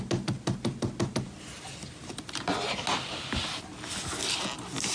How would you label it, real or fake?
real